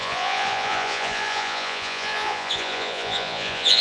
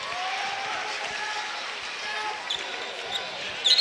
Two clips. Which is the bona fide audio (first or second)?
second